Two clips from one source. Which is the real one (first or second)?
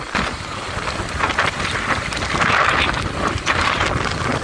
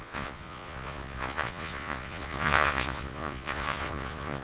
first